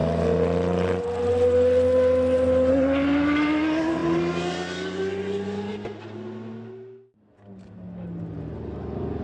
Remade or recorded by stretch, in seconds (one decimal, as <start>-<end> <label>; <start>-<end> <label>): 0.0-9.2 recorded